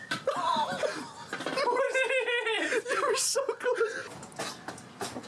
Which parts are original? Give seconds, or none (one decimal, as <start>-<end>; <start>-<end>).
1.5-4.7